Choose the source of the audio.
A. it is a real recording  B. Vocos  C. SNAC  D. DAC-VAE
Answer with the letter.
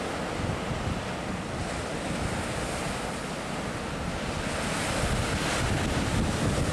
A